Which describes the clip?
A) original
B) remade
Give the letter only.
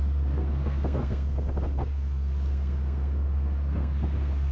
B